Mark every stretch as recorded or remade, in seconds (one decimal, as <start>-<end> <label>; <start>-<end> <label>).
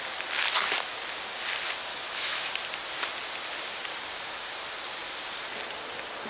0.0-1.9 recorded; 1.9-2.5 remade; 2.5-6.3 recorded